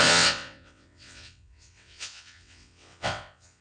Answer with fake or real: fake